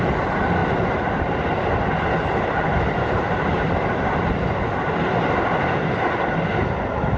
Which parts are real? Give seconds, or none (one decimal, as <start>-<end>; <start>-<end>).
0.0-7.2